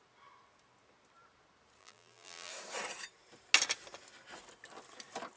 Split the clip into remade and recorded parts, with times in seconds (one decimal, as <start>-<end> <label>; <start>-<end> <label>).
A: 0.0-1.8 recorded; 1.8-2.5 remade; 2.5-5.4 recorded